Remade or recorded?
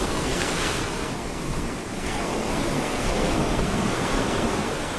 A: remade